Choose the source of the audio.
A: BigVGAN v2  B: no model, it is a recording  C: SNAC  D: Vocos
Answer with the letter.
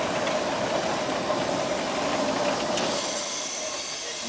B